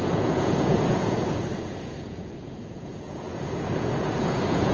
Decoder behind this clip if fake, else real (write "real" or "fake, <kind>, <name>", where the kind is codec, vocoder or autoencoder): fake, vocoder, Vocos